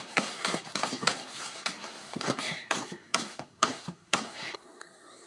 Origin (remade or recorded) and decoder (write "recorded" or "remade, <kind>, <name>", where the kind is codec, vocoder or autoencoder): remade, codec, SNAC